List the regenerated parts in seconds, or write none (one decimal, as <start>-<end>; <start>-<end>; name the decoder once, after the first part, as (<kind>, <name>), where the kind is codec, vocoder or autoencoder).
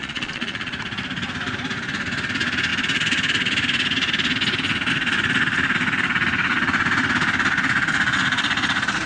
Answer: 0.0-0.7 (vocoder, Vocos)